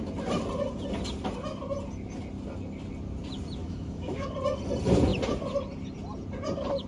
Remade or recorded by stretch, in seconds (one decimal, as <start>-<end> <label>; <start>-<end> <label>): 0.0-3.6 recorded; 3.6-4.3 remade; 4.3-6.9 recorded

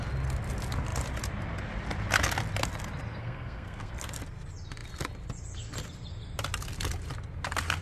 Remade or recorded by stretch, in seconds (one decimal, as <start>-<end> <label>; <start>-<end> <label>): 0.0-3.2 recorded; 3.2-3.9 remade; 3.9-7.8 recorded

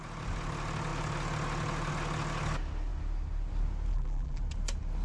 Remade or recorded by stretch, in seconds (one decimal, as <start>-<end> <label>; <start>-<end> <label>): 0.0-3.9 recorded; 3.9-4.4 remade; 4.4-5.0 recorded

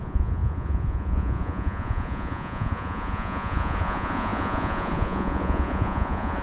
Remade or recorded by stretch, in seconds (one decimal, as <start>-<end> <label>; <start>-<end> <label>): 0.0-6.4 remade

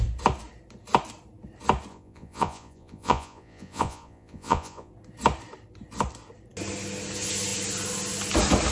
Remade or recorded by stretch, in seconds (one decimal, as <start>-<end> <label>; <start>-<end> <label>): 0.0-1.9 recorded; 1.9-4.9 remade; 4.9-8.7 recorded

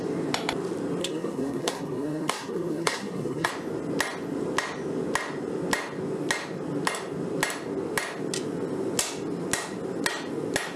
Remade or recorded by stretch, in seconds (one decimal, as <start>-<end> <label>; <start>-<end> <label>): 0.0-1.0 recorded; 1.0-3.5 remade; 3.5-10.8 recorded